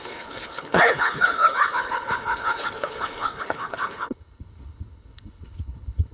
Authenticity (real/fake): fake